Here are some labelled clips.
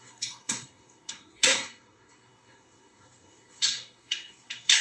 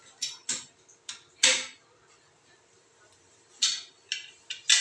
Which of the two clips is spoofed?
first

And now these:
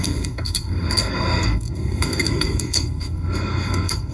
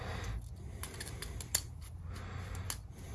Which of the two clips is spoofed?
first